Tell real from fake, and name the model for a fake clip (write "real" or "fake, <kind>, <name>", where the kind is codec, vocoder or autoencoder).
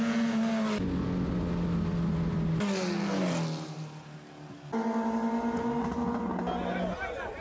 real